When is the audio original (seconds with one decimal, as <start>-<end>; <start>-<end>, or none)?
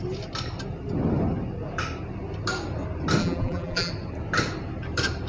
0.0-3.2; 3.9-5.3